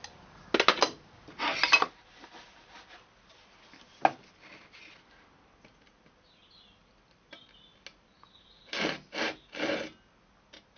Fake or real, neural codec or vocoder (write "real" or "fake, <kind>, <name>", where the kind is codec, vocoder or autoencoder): real